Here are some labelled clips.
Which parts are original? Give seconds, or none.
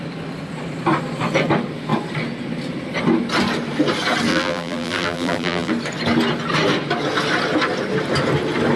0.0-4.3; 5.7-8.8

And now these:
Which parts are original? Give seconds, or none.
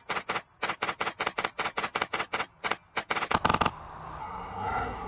0.0-4.2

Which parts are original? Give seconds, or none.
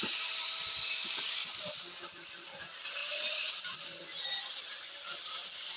0.0-5.8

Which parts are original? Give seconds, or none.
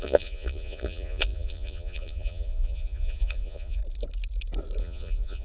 3.8-4.8